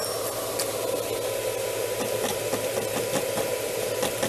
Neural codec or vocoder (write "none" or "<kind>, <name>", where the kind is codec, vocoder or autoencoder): none